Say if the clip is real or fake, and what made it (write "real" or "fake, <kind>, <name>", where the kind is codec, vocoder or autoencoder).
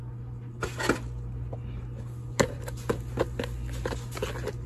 real